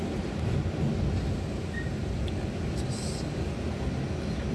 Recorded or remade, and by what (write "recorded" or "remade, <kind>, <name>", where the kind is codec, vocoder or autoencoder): recorded